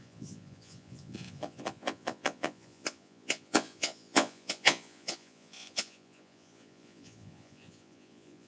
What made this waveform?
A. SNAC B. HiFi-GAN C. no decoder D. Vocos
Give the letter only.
D